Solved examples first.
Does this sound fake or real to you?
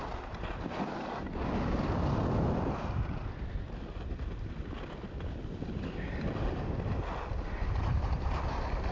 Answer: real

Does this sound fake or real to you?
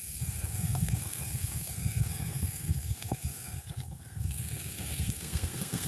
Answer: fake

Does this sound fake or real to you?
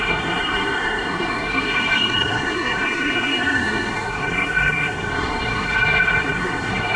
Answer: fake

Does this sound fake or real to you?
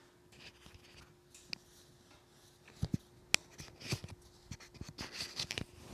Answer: real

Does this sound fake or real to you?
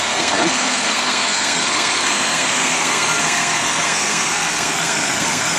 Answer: fake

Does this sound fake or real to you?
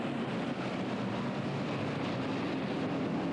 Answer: real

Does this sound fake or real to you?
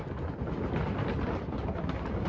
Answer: real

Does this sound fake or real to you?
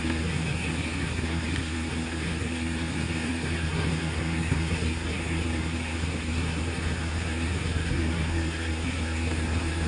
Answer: fake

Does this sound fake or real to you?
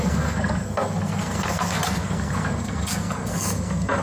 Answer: fake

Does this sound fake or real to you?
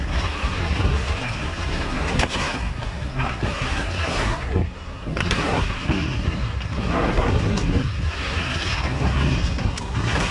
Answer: fake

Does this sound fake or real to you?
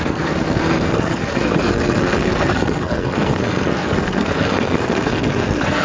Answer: fake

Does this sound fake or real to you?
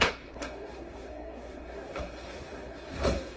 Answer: fake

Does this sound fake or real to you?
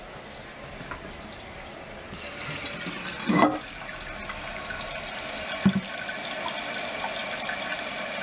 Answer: real